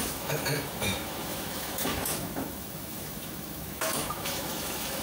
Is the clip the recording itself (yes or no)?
no